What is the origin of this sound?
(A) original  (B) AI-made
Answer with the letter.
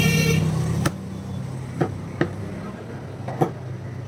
A